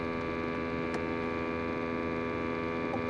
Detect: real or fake real